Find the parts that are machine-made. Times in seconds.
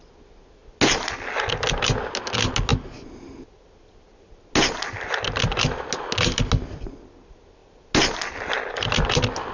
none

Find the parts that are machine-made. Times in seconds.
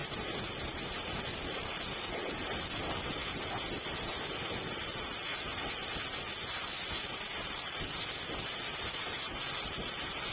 none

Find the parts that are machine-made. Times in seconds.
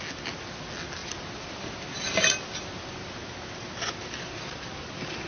none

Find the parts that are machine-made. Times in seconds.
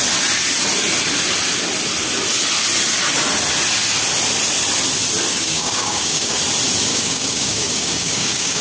5.3-6.4 (codec, DAC); 6.9-8.6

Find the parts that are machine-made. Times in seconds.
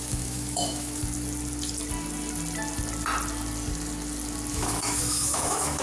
0.0-1.0 (autoencoder, DAC-VAE); 4.5-5.8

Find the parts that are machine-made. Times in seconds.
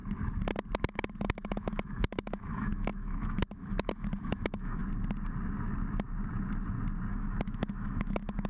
0.8-4.8 (autoencoder, DAC-VAE); 7.1-8.5